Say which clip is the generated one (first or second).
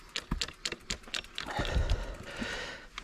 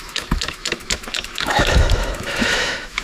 second